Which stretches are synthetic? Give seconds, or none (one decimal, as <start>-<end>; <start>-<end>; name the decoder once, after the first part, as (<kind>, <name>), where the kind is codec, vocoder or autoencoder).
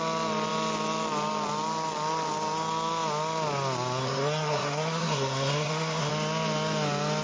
4.0-6.1 (codec, SNAC)